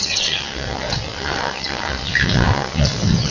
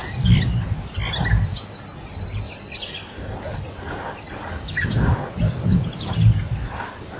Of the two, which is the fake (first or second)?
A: first